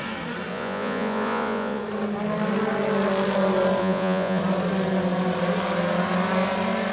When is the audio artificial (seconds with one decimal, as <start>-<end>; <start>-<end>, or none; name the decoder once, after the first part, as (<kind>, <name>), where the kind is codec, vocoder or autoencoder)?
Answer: 0.5-1.8 (vocoder, Vocos); 3.8-4.4